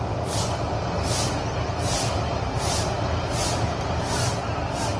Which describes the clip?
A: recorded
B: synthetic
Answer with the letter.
B